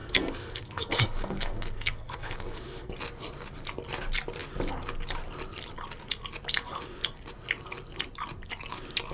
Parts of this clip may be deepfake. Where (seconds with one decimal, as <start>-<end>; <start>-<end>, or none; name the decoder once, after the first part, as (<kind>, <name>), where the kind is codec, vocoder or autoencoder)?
0.0-2.9 (codec, SNAC)